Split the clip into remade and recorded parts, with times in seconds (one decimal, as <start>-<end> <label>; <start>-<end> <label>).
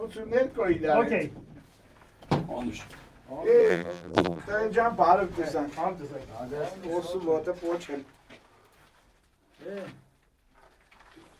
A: 0.0-3.6 recorded; 3.6-4.4 remade; 4.4-11.4 recorded